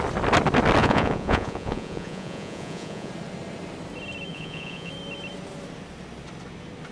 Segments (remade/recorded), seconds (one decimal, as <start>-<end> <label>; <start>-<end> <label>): 0.0-0.8 recorded; 0.8-3.1 remade; 3.1-4.3 recorded; 4.3-4.9 remade; 4.9-6.9 recorded